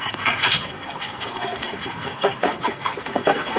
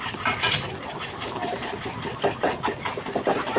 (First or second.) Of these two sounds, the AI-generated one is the first